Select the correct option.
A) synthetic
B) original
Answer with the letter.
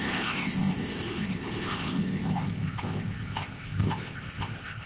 A